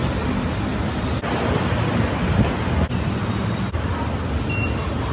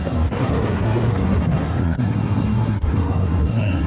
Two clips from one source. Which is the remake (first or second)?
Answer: second